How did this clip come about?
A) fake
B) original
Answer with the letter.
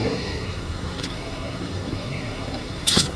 A